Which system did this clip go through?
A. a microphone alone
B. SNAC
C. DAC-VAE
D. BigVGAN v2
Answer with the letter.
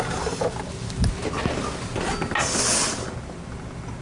A